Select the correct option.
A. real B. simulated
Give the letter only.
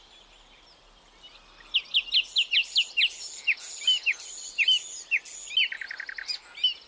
A